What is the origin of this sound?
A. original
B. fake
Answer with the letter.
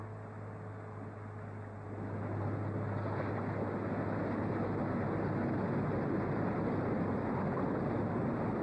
A